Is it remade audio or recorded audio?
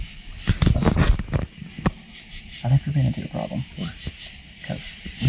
recorded